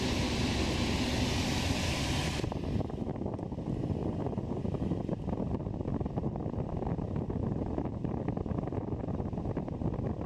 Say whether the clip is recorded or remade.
recorded